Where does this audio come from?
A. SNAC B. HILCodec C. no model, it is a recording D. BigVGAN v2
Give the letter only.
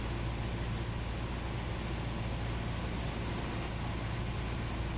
C